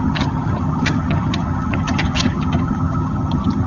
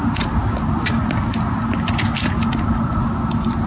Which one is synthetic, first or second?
first